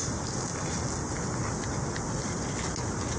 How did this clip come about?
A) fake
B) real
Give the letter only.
B